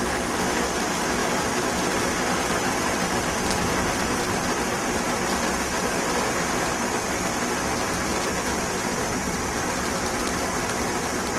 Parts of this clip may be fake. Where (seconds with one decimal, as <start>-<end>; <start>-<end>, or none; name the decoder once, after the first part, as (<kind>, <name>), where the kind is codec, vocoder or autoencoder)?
1.2-4.9 (vocoder, BigVGAN v2); 9.1-10.4